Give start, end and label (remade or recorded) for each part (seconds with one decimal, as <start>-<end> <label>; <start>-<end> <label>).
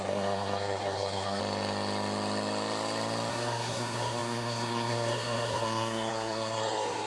0.0-1.4 remade; 1.4-3.3 recorded; 3.3-7.1 remade